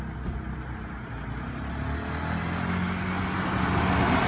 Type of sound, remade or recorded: recorded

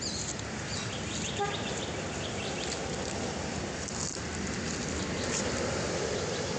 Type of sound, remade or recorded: recorded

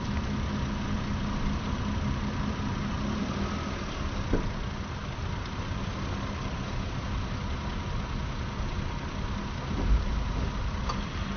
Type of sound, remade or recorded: recorded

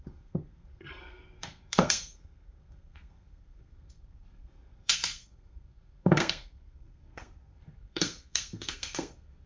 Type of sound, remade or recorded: remade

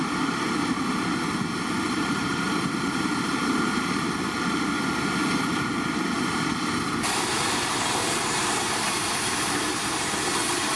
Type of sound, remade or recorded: remade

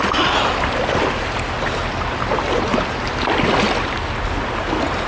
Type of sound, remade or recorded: recorded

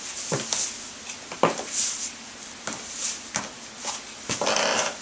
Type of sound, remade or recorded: recorded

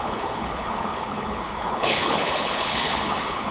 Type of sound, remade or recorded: remade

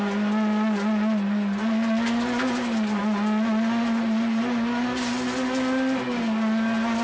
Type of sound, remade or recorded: recorded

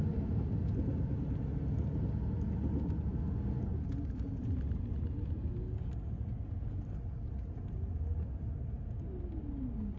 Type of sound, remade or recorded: recorded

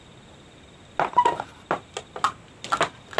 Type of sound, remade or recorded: recorded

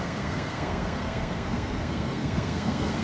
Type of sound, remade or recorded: remade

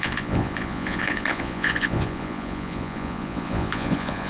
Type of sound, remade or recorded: remade